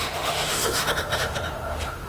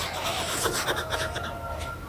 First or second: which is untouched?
second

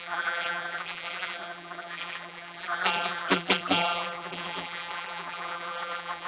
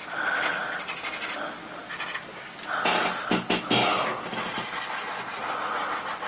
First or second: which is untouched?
second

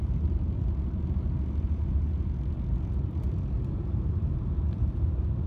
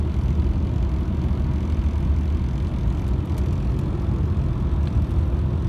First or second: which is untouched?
second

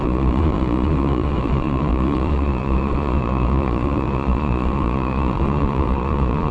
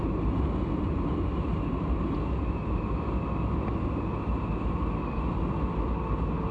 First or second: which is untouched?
second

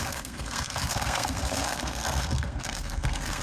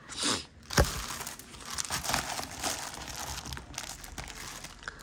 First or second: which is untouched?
second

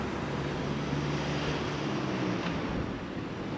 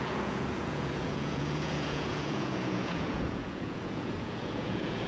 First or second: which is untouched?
first